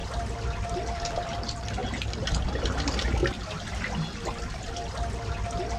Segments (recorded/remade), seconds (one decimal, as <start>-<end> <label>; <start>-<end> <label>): 0.0-5.8 recorded

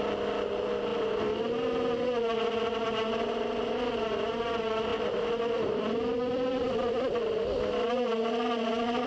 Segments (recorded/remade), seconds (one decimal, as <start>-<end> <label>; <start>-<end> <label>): 0.0-4.9 recorded; 4.9-7.4 remade; 7.4-9.1 recorded

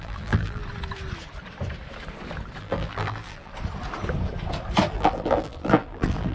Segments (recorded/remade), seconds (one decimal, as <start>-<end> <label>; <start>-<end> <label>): 0.0-0.6 remade; 0.6-2.6 recorded; 2.6-3.5 remade; 3.5-4.9 recorded; 4.9-6.3 remade

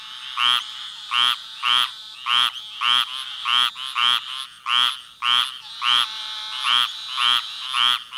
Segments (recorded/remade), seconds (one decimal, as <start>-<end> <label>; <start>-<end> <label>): 0.0-8.2 recorded

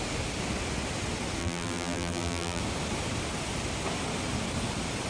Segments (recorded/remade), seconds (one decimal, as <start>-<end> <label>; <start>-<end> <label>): 0.0-1.4 recorded; 1.4-2.6 remade; 2.6-5.1 recorded